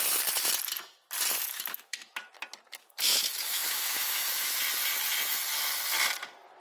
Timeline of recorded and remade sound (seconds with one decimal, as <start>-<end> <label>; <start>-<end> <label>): 0.0-1.4 recorded; 1.4-2.3 remade; 2.3-2.8 recorded; 2.8-4.6 remade; 4.6-6.6 recorded